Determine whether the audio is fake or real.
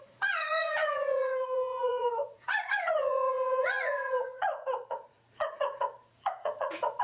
fake